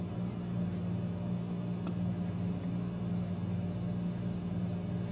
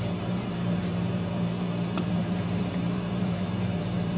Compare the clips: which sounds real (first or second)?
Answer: first